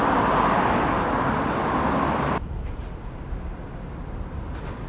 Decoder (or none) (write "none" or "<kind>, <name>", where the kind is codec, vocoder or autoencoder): none